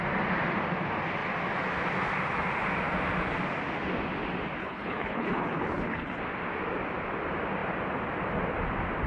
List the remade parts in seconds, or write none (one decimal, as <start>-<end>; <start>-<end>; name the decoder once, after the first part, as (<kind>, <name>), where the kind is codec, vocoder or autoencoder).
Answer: 4.6-6.2 (codec, HILCodec)

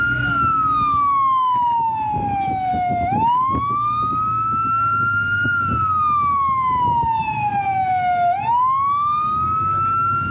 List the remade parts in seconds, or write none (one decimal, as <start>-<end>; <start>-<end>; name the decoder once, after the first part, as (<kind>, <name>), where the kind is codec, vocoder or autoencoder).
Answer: none

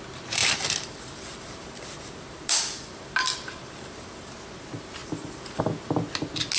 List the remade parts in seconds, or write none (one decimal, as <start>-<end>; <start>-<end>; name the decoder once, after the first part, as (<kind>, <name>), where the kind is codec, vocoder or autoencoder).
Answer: 0.4-4.3 (vocoder, BigVGAN v2); 5.0-5.6

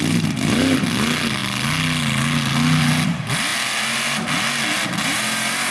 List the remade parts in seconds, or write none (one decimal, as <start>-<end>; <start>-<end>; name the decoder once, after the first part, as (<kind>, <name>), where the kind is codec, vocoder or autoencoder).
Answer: none